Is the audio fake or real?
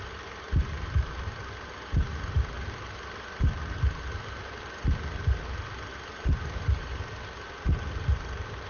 real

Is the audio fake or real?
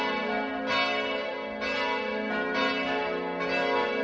real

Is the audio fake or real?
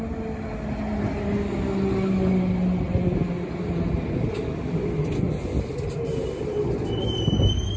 real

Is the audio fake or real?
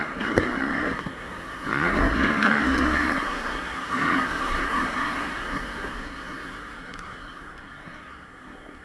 fake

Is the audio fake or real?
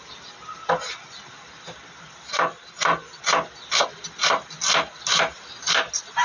real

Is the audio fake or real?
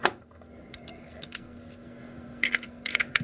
fake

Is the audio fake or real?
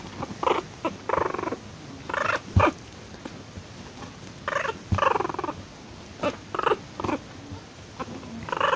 real